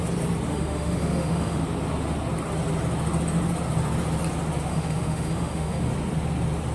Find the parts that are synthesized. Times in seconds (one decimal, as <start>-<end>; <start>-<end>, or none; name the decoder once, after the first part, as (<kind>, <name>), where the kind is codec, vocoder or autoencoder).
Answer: 0.5-1.6 (autoencoder, DAC-VAE); 4.7-5.9